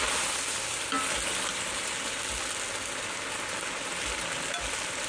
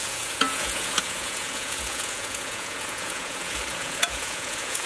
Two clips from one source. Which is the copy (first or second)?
second